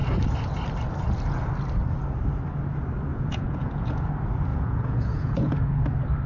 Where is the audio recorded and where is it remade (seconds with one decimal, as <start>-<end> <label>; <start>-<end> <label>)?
0.0-3.1 recorded; 3.1-4.1 remade; 4.1-4.5 recorded; 4.5-5.8 remade; 5.8-6.3 recorded